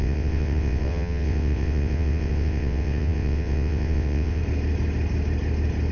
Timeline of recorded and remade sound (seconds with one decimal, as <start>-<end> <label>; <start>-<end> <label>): 0.0-4.4 remade; 4.4-5.9 recorded

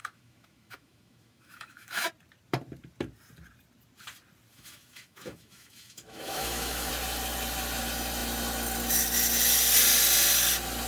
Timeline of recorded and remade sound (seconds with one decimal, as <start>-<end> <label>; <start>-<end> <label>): 0.0-2.1 remade; 2.1-4.5 recorded; 4.5-6.9 remade; 6.9-10.9 recorded

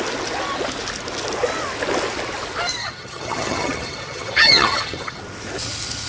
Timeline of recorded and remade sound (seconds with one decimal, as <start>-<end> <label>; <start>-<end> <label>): 0.0-2.8 recorded; 2.8-5.2 remade; 5.2-6.1 recorded

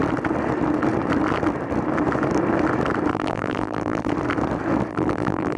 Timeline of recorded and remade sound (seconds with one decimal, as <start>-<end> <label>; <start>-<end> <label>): 0.0-3.1 recorded; 3.1-4.1 remade; 4.1-4.9 recorded; 4.9-5.6 remade

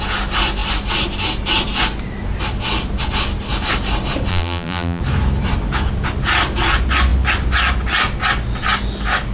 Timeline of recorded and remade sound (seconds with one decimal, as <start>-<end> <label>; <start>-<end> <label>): 0.0-4.3 recorded; 4.3-5.0 remade; 5.0-9.3 recorded